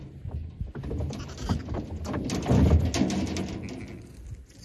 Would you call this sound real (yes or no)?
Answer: yes